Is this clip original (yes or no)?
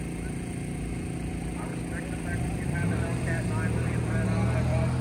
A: yes